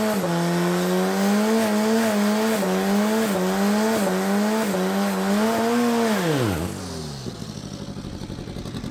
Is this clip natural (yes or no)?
yes